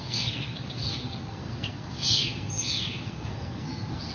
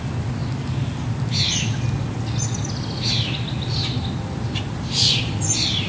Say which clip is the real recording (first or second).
second